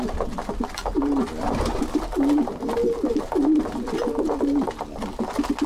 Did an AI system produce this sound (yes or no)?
no